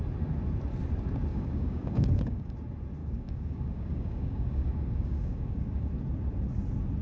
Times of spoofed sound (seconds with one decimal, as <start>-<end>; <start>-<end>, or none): 1.3-2.5; 3.0-5.9